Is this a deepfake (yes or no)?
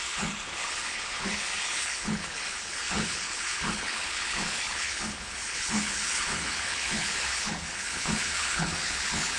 yes